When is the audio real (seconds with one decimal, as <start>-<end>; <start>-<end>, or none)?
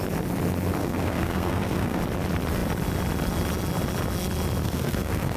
0.0-0.8; 2.0-4.6